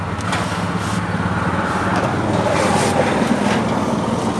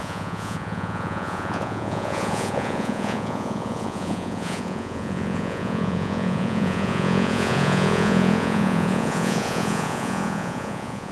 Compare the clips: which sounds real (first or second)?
first